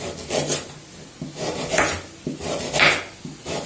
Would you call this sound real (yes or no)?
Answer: yes